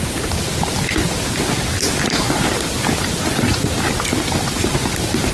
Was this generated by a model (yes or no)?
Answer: no